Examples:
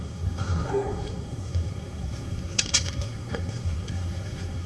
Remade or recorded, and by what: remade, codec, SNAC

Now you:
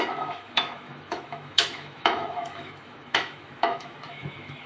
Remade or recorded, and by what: remade, autoencoder, DAC-VAE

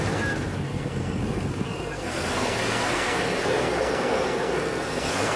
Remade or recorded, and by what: remade, codec, SNAC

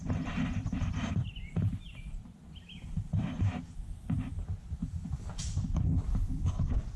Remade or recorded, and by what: remade, vocoder, BigVGAN v2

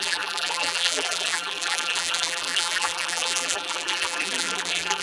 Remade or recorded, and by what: remade, vocoder, BigVGAN v2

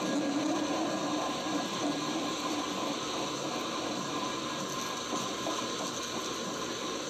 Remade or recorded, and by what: recorded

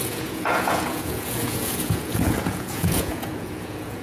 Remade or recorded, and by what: remade, vocoder, Vocos